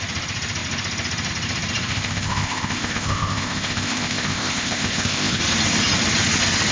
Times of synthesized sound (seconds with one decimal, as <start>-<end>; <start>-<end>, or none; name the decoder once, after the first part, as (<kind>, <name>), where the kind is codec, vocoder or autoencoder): 1.9-5.4 (codec, ZipCodec)

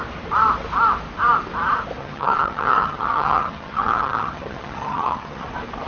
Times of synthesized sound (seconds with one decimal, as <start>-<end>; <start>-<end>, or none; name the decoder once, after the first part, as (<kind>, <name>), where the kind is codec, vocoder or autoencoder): 2.0-5.5 (vocoder, HiFi-GAN)

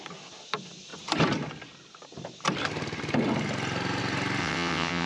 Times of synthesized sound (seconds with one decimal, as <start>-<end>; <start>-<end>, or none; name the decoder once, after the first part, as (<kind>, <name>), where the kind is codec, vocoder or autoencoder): 4.4-5.1 (vocoder, WaveNeXt)

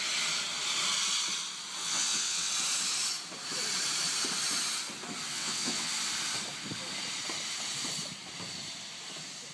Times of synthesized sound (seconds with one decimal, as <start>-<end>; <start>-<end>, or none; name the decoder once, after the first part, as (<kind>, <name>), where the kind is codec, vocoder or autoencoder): 1.8-2.5 (vocoder, WaveNeXt); 5.3-5.9

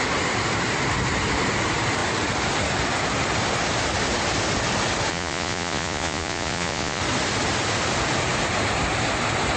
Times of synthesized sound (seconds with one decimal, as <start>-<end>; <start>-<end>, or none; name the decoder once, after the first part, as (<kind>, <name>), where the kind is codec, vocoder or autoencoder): 5.1-7.0 (vocoder, Vocos)

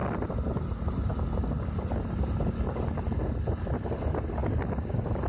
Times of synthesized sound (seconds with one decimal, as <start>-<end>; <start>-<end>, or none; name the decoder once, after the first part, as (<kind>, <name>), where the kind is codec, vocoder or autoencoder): none

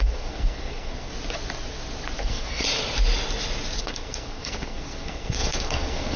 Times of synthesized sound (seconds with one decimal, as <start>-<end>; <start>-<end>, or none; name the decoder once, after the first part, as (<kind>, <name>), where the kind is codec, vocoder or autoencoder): 0.0-1.1 (codec, SNAC); 2.2-2.6; 3.8-6.2